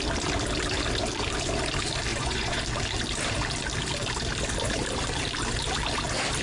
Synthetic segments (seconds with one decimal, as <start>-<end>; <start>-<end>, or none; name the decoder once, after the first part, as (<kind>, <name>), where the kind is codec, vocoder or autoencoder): 2.1-2.6 (vocoder, Vocos)